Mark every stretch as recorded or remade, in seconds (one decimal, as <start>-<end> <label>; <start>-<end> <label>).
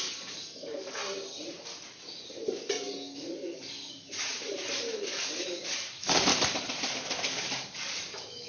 0.0-1.0 remade; 1.0-2.5 recorded; 2.5-6.3 remade; 6.3-6.9 recorded; 6.9-8.5 remade